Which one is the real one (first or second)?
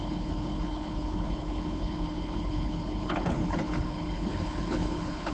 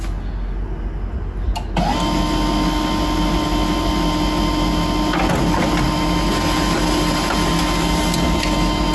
second